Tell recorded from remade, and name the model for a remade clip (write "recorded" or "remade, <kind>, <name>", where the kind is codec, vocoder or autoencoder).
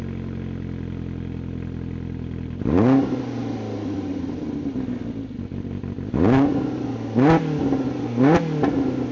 recorded